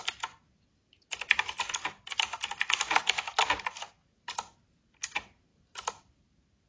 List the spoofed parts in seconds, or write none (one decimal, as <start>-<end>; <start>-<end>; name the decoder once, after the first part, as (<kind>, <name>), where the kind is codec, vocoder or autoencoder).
none